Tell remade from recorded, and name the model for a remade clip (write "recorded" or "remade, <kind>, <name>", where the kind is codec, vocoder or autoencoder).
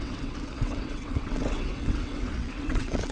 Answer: remade, vocoder, WaveNeXt